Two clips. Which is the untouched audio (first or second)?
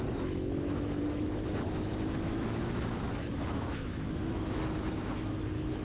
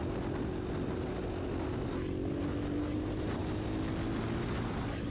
second